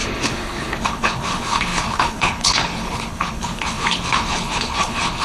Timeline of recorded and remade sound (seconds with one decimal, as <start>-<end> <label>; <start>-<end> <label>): 0.0-5.2 remade